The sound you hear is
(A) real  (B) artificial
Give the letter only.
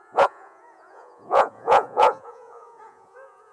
B